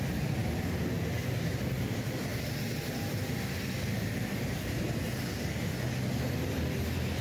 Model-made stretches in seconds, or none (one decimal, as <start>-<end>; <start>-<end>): none